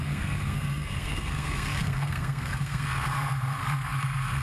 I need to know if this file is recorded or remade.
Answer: remade